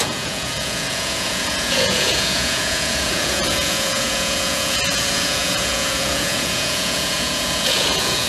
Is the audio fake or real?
fake